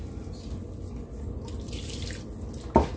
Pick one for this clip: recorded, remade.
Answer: recorded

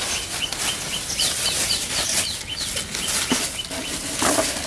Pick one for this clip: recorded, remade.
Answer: recorded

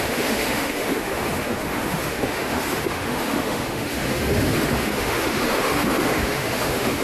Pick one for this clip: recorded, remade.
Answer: remade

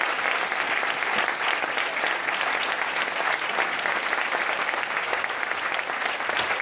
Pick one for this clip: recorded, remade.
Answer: recorded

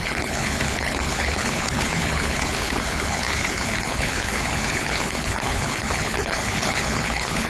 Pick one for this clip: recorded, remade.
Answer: remade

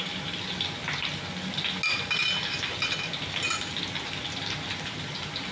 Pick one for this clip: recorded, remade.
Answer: recorded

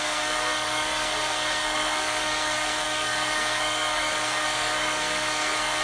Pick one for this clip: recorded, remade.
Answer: remade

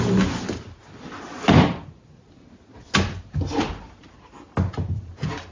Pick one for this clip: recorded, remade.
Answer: recorded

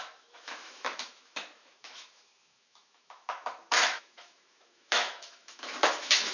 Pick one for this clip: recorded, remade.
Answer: remade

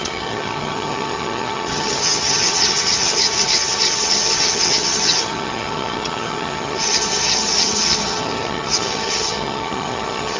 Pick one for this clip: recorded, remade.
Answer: remade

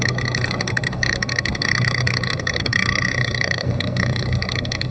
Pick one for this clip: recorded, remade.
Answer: remade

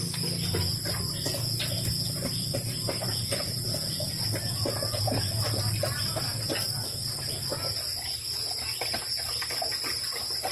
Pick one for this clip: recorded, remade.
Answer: recorded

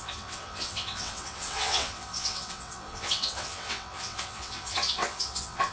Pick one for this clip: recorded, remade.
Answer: remade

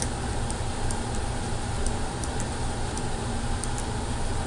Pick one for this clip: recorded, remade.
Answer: recorded